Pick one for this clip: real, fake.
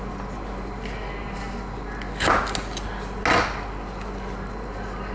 real